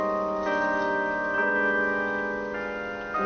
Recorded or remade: recorded